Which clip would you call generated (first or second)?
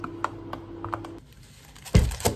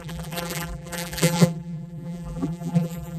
second